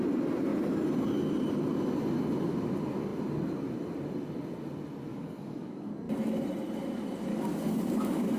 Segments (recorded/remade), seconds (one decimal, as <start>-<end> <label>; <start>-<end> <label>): 0.0-5.1 recorded; 5.1-5.9 remade; 5.9-7.3 recorded; 7.3-8.4 remade